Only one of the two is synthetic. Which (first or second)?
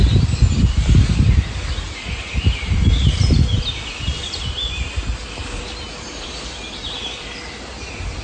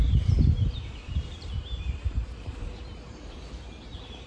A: second